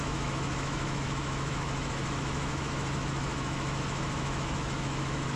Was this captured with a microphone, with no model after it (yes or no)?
no